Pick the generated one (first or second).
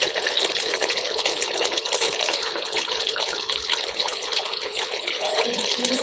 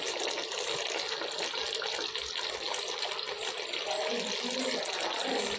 first